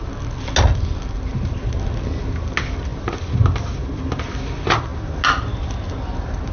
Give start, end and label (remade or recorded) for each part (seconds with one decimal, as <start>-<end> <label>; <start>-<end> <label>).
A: 0.0-6.5 recorded